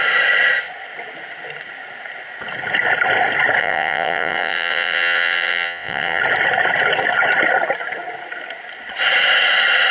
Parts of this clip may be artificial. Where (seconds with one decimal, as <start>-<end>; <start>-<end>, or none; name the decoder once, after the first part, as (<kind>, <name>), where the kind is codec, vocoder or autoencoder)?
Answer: 3.6-6.2 (vocoder, WaveNeXt)